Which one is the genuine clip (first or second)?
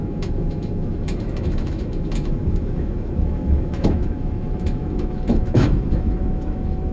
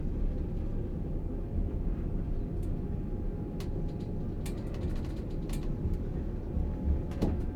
second